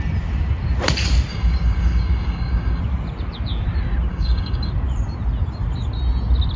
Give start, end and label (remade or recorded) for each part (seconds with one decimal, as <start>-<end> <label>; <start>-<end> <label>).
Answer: 0.0-1.3 recorded; 1.3-2.8 remade; 2.8-4.1 recorded; 4.1-4.7 remade; 4.7-6.6 recorded